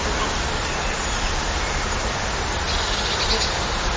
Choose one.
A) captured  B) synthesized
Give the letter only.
A